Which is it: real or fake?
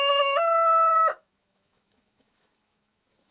fake